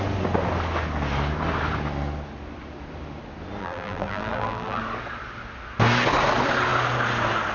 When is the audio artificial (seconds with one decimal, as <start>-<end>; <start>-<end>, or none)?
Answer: 3.6-4.8